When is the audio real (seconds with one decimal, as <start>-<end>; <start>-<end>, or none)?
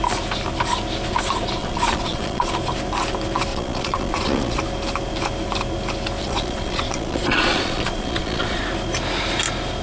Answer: 0.0-1.6; 2.5-3.5; 4.6-6.2; 8.6-9.8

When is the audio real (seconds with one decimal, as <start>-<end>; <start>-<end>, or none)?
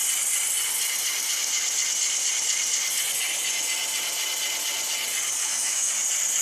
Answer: 0.0-5.4; 5.9-6.4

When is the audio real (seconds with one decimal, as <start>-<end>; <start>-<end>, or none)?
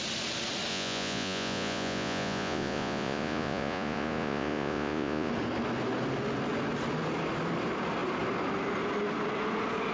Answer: 0.0-0.7; 5.3-9.9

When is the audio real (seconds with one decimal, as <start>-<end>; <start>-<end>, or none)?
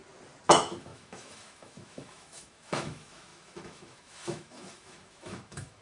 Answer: 0.0-0.5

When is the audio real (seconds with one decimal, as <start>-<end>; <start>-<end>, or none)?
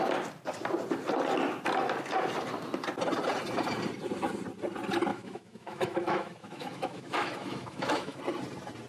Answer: 0.0-5.1; 8.2-8.9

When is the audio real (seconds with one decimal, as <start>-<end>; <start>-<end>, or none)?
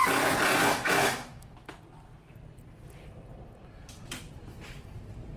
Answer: 0.0-0.6; 1.7-5.4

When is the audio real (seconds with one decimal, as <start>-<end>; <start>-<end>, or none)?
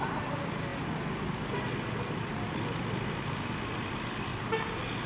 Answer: 0.0-5.1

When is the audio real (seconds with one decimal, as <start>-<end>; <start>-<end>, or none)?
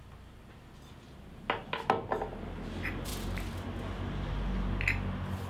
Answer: 0.0-5.5